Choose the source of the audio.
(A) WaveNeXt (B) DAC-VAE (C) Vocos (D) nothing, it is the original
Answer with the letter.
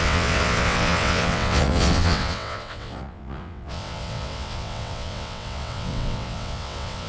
A